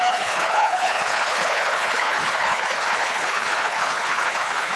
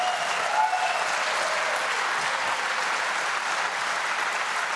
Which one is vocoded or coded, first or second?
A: first